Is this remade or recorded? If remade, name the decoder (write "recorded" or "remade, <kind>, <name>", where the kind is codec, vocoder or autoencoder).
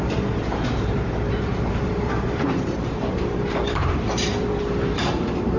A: remade, vocoder, BigVGAN v2